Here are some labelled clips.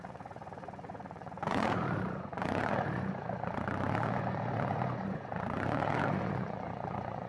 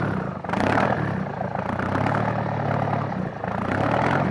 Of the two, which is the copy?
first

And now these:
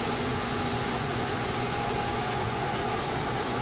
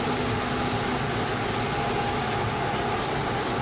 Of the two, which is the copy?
first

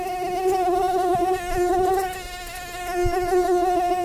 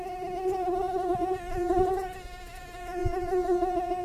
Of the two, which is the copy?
second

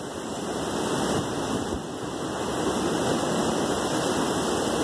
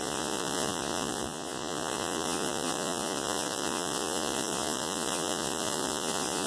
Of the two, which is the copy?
second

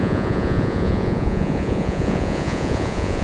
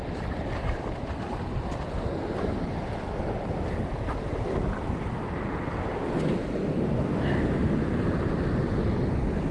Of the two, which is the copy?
first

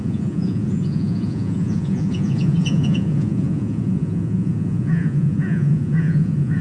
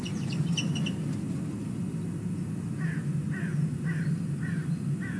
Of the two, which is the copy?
first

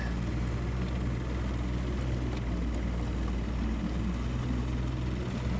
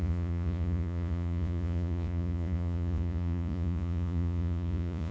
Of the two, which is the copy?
second